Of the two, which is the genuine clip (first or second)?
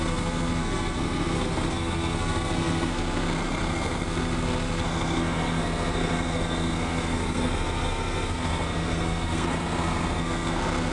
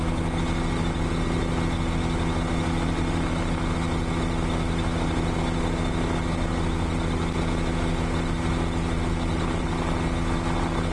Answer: second